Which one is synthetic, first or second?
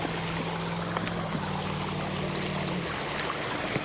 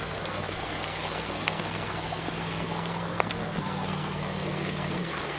second